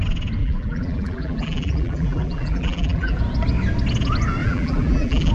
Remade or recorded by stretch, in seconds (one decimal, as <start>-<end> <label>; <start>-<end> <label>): 0.0-0.4 recorded; 0.4-3.2 remade; 3.2-4.4 recorded; 4.4-5.3 remade